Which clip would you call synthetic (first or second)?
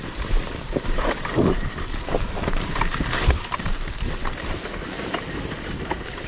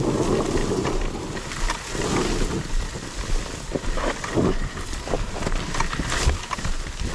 first